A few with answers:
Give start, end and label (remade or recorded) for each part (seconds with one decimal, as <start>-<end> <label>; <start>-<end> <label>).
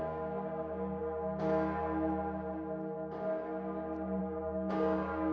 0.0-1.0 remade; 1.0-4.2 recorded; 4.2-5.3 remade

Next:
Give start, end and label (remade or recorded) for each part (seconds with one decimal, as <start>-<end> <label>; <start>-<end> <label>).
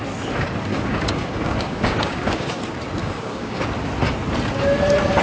0.0-0.7 recorded; 0.7-2.5 remade; 2.5-3.0 recorded; 3.0-3.6 remade; 3.6-5.2 recorded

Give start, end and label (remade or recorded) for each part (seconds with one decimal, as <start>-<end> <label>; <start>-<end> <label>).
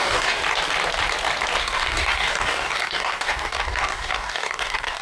0.0-0.4 remade; 0.4-1.6 recorded; 1.6-5.0 remade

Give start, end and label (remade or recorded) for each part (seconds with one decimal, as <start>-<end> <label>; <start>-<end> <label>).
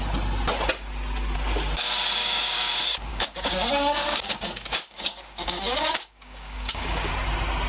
0.0-2.2 recorded; 2.2-2.7 remade; 2.7-3.1 recorded; 3.1-7.1 remade; 7.1-7.7 recorded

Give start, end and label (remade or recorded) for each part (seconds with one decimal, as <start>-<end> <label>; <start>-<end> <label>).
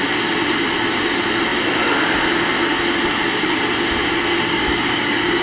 0.0-4.3 recorded; 4.3-5.4 remade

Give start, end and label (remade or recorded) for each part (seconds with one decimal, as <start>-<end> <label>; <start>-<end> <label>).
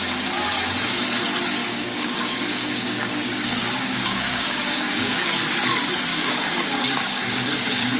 0.0-1.6 recorded; 1.6-5.3 remade; 5.3-6.1 recorded; 6.1-8.0 remade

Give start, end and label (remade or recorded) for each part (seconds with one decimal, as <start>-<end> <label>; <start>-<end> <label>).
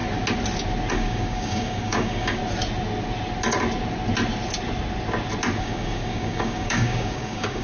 0.0-0.9 recorded; 0.9-2.4 remade; 2.4-5.6 recorded; 5.6-7.6 remade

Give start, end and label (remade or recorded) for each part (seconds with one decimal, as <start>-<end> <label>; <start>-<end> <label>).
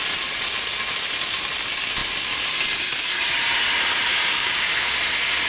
0.0-4.1 recorded; 4.1-4.7 remade; 4.7-5.5 recorded